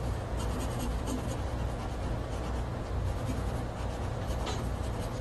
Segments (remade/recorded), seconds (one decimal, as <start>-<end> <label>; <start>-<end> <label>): 0.0-5.2 recorded